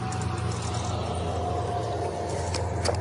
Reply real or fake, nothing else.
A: real